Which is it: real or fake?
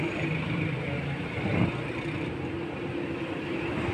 fake